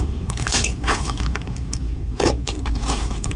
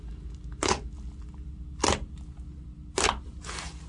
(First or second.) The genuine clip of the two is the second